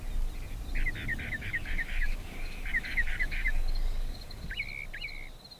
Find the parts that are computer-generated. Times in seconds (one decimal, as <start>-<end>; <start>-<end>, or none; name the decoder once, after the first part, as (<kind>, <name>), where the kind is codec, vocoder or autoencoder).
1.1-4.5 (codec, DAC)